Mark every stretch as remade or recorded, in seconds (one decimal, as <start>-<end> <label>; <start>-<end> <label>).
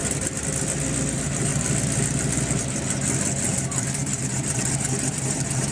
0.0-1.1 recorded; 1.1-1.5 remade; 1.5-3.5 recorded; 3.5-5.7 remade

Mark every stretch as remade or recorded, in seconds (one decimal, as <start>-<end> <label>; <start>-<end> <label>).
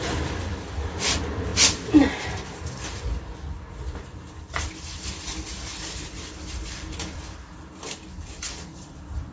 0.0-1.5 remade; 1.5-2.4 recorded; 2.4-9.3 remade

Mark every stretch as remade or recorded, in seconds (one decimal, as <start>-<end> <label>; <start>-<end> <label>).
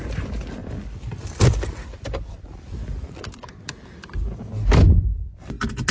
0.0-0.6 recorded; 0.6-4.1 remade; 4.1-5.9 recorded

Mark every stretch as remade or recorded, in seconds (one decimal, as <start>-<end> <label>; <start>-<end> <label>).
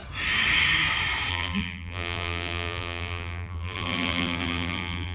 0.0-1.3 recorded; 1.3-5.1 remade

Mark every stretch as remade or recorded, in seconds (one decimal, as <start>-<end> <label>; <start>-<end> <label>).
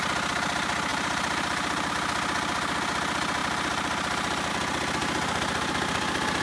0.0-0.9 recorded; 0.9-1.9 remade; 1.9-3.4 recorded; 3.4-4.5 remade; 4.5-5.0 recorded; 5.0-6.4 remade